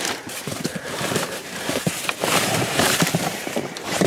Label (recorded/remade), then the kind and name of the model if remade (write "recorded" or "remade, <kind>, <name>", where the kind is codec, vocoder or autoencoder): remade, vocoder, BigVGAN v2